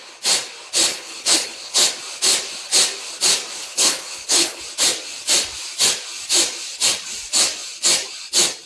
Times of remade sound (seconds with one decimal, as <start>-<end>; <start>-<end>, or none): 0.9-1.9; 3.6-4.6